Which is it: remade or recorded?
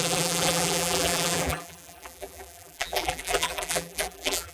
remade